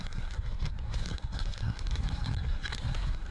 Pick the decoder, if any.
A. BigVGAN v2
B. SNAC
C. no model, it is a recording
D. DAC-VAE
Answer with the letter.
B